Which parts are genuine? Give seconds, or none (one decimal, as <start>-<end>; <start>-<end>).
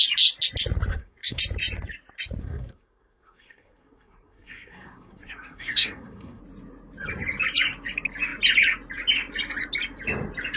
0.0-0.9; 1.4-2.4; 6.4-10.6